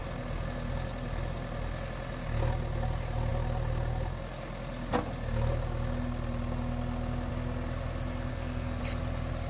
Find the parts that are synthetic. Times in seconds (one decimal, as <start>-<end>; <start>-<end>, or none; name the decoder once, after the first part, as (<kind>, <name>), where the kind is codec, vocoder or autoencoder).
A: 8.3-8.8 (codec, SNAC)